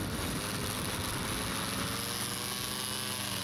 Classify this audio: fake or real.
real